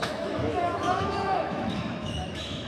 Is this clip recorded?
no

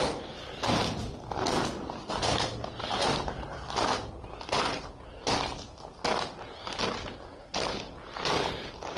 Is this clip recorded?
yes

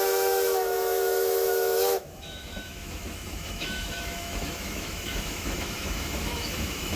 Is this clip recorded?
no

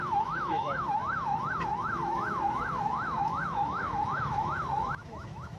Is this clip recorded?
no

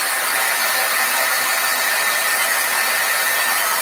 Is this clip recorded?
yes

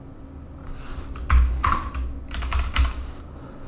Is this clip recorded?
yes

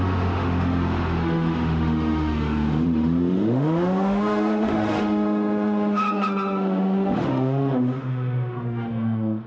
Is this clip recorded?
no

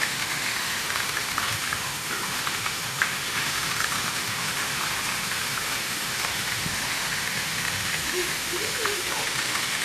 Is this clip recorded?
no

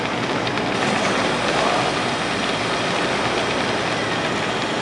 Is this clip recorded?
yes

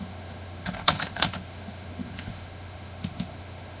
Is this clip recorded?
no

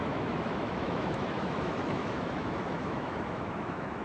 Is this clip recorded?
no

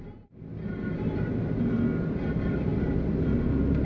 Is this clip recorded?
yes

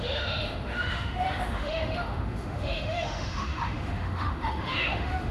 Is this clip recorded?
no